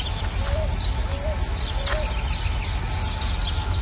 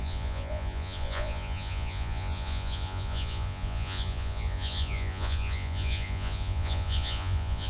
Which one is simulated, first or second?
second